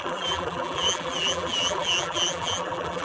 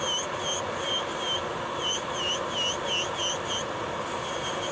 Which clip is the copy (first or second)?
first